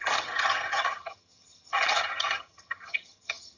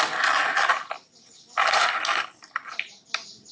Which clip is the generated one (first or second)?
first